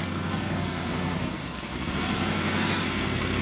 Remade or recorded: remade